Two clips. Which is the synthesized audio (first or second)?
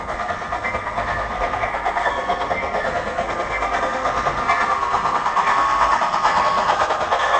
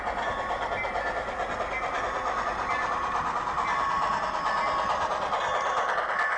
first